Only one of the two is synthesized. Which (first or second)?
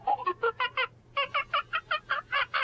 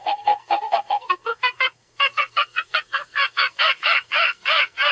second